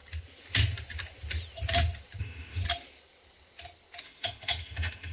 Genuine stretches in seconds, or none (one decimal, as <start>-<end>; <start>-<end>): 0.0-2.2; 2.6-4.0